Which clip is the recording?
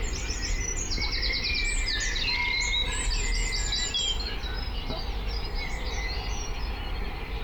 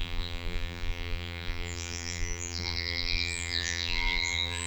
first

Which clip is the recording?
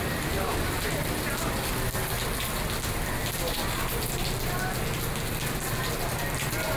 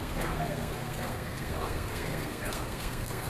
first